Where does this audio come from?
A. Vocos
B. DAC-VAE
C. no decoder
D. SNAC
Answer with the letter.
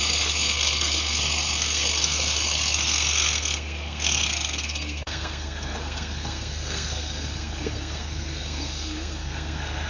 D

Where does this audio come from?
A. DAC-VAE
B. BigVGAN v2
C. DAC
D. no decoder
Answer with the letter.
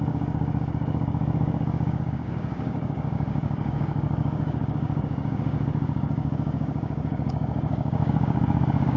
C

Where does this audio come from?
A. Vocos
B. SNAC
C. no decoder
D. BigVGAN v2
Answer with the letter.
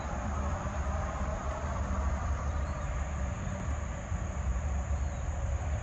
D